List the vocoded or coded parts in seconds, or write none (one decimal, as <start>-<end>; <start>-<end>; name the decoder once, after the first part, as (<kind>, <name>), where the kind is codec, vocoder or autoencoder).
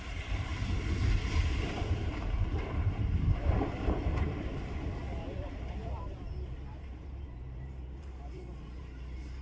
0.0-0.5 (vocoder, BigVGAN v2); 1.8-9.4